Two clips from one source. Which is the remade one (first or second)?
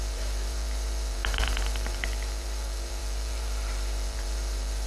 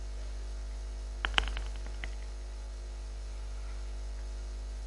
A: first